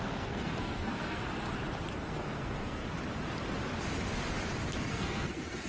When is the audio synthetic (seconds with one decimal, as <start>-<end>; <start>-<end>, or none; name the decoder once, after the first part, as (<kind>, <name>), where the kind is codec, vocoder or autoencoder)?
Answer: 0.0-1.2 (codec, SNAC); 1.9-2.8; 4.8-5.7